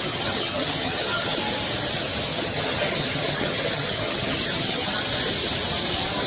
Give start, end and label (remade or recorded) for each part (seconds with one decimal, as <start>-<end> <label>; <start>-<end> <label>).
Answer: 0.0-1.4 remade; 1.4-2.3 recorded; 2.3-5.1 remade; 5.1-6.3 recorded